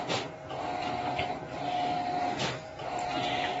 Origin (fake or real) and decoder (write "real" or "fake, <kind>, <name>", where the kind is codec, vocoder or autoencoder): real